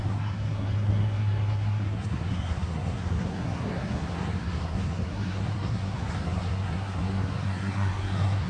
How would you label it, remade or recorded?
remade